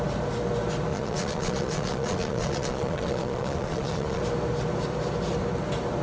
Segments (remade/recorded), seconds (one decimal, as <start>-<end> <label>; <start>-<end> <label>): 0.0-0.9 recorded; 0.9-4.2 remade; 4.2-6.0 recorded